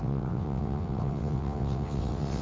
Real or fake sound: fake